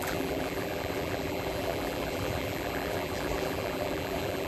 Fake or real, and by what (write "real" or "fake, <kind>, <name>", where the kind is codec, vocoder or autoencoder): fake, vocoder, BigVGAN v2